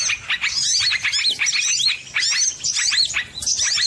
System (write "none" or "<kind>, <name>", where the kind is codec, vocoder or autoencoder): none